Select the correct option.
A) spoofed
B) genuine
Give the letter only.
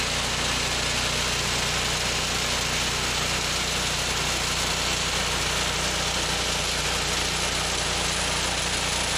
B